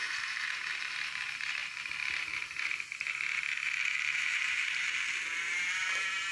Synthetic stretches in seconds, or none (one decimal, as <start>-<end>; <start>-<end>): 0.0-6.3